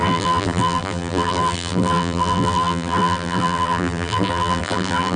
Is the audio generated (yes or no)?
yes